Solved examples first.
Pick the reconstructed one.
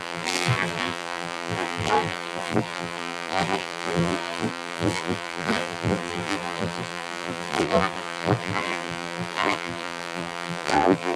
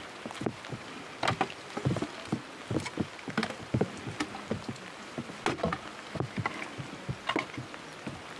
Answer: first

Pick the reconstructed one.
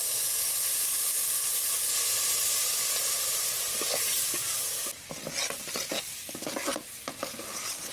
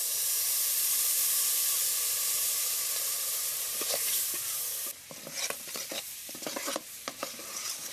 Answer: second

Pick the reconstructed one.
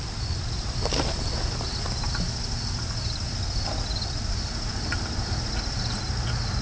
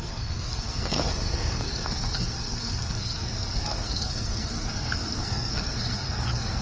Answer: second